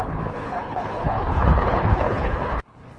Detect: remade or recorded remade